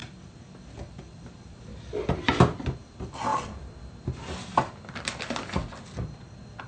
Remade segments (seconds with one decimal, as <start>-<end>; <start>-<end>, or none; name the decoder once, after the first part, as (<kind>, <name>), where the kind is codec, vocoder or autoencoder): none